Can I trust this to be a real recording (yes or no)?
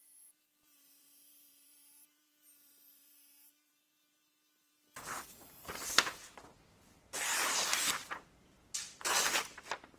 no